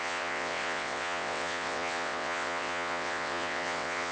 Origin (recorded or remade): remade